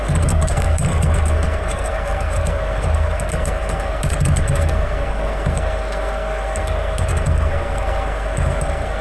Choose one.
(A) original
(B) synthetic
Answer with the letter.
B